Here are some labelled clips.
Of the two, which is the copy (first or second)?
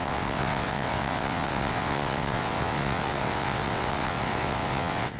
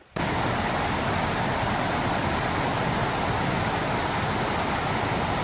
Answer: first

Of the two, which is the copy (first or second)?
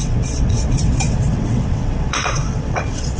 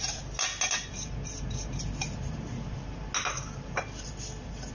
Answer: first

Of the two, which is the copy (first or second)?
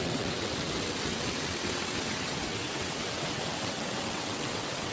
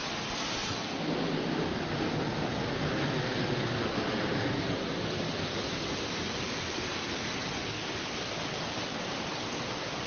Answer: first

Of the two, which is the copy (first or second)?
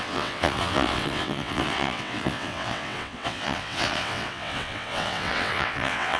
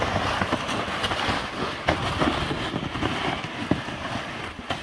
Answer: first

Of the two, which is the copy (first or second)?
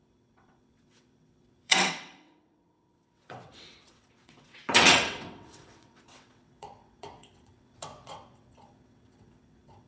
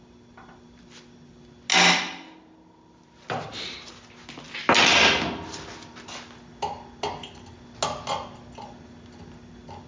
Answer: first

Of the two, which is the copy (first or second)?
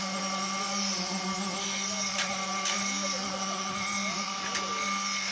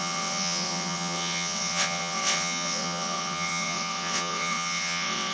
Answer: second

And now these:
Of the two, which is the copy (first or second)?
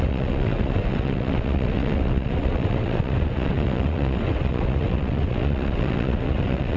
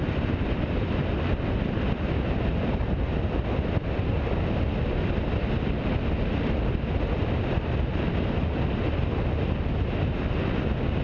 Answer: first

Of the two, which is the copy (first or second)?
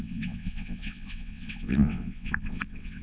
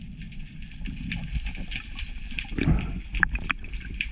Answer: first